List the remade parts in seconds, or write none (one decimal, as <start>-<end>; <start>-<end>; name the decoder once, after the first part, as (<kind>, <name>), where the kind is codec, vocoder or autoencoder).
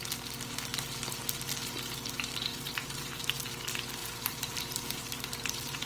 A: 2.5-3.3 (vocoder, BigVGAN v2); 4.0-5.9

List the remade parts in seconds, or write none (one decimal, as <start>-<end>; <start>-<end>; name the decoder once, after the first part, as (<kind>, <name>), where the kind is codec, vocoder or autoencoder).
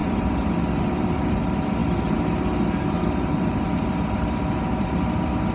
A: 0.0-5.5 (vocoder, BigVGAN v2)